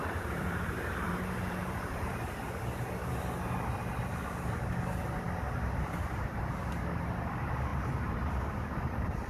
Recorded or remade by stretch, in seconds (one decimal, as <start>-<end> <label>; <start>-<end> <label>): 0.0-2.1 remade; 2.1-7.3 recorded; 7.3-9.3 remade